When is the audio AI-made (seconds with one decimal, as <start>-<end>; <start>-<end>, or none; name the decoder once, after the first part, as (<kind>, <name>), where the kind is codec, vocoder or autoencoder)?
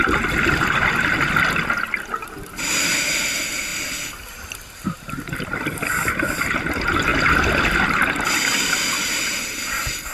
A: none